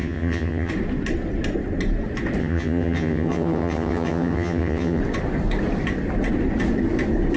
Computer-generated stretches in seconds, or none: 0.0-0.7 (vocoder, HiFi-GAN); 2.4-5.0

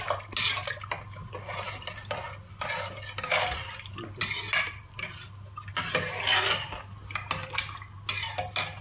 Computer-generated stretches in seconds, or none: none